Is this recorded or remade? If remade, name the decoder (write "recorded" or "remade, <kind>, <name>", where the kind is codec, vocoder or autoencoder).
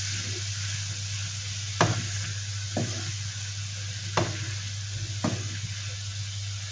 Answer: recorded